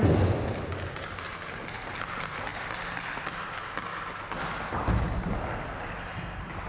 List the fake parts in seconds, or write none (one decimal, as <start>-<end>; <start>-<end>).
none